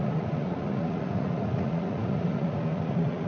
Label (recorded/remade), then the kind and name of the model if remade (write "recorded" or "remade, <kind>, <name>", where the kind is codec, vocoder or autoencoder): remade, vocoder, Vocos